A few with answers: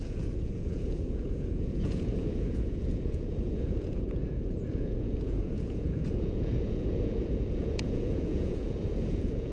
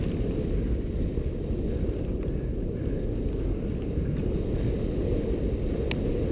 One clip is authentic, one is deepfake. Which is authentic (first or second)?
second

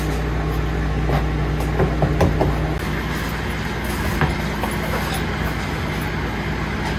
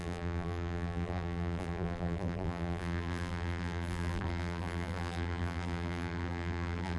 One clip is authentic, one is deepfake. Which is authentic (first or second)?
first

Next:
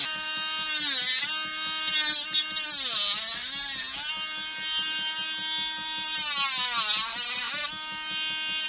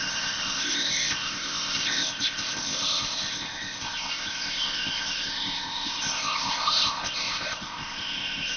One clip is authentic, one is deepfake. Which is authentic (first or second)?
first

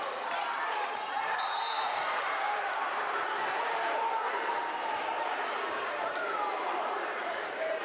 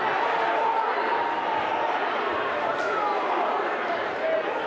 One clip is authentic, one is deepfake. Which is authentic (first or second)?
second